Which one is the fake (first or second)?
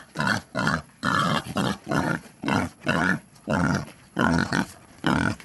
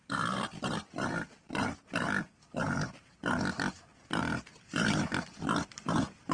first